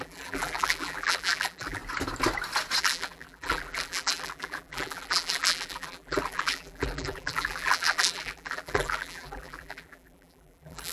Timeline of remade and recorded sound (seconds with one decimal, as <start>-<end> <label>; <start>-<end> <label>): 0.0-1.8 remade; 1.8-2.8 recorded; 2.8-10.9 remade